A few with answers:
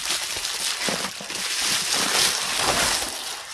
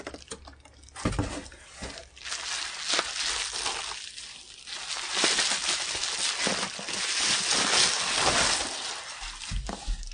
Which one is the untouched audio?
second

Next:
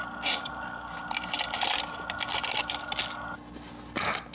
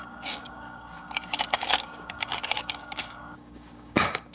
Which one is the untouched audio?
first